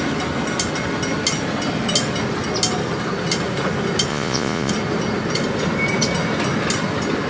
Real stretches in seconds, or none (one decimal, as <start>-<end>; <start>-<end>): 0.0-4.1; 4.7-7.3